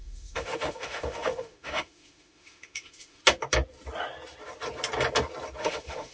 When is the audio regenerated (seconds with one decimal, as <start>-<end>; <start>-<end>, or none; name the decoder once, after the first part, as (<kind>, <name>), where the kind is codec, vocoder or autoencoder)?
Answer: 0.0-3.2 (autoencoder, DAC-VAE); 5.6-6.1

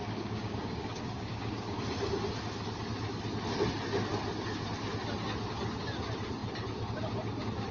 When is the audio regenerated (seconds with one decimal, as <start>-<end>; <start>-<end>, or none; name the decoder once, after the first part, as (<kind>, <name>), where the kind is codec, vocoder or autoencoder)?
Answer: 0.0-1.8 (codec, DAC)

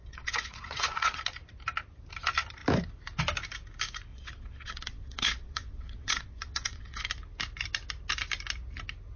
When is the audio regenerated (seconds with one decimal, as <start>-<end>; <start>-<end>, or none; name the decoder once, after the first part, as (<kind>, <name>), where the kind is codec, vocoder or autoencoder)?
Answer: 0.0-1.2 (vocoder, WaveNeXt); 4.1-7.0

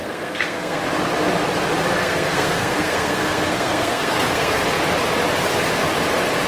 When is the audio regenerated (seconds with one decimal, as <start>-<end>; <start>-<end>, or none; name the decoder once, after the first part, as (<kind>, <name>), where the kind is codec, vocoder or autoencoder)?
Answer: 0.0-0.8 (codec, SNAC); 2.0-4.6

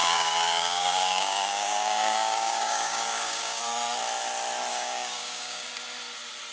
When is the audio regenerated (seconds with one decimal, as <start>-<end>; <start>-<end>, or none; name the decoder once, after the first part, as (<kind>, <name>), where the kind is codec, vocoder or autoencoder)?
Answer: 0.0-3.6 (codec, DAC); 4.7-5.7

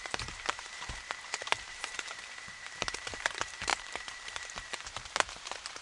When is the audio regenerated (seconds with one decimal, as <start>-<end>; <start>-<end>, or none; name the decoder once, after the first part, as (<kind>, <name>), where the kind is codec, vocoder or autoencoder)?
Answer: 0.0-5.8 (vocoder, BigVGAN v2)